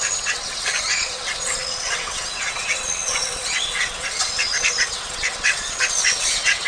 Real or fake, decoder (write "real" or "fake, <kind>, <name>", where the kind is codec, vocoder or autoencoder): fake, vocoder, WaveNeXt